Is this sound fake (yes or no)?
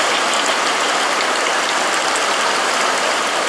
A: no